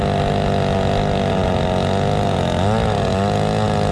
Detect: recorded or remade recorded